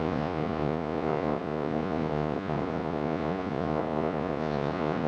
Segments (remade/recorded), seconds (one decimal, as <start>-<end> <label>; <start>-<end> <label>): 0.0-5.1 remade